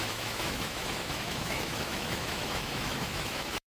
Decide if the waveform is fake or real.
fake